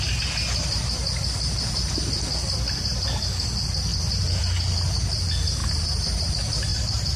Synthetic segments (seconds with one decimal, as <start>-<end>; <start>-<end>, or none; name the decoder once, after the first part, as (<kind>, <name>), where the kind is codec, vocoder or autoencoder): 5.6-6.3 (vocoder, BigVGAN v2); 6.7-7.2